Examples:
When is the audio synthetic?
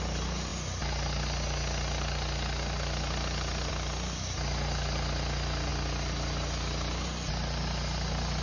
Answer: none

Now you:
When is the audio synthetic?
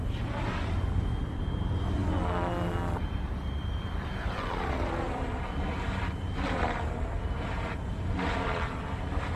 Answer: 0.0-2.0 (vocoder, BigVGAN v2); 3.0-9.4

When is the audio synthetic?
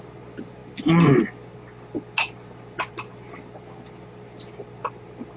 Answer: none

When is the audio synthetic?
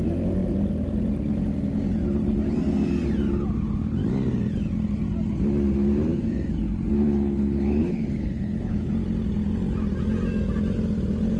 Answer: 6.9-8.9 (codec, HILCodec)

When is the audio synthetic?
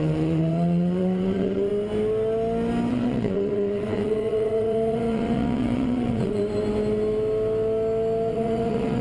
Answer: 0.0-1.7 (vocoder, WaveNeXt); 2.9-6.4; 8.3-9.0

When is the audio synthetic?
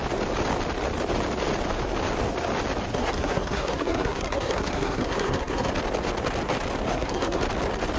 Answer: 2.9-5.7 (codec, SNAC); 6.9-7.4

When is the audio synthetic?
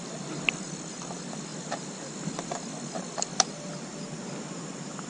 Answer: none